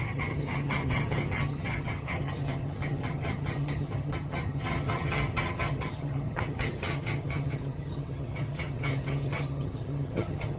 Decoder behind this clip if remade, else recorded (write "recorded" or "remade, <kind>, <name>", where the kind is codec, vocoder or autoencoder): remade, vocoder, HiFi-GAN